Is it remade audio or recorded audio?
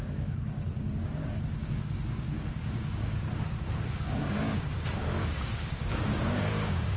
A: remade